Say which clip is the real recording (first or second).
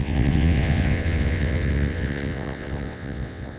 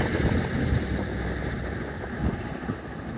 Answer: second